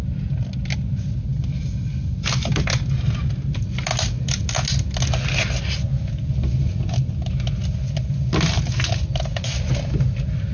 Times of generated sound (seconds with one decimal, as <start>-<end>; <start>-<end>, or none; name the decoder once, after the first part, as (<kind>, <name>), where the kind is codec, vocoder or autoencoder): none